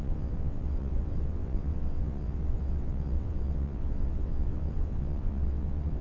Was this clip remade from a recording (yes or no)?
yes